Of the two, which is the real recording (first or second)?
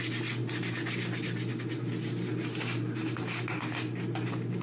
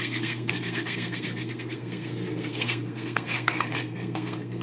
first